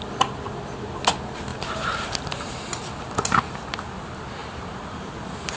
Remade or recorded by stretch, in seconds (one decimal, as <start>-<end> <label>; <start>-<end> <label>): 0.0-1.5 recorded; 1.5-2.5 remade; 2.5-4.4 recorded; 4.4-5.6 remade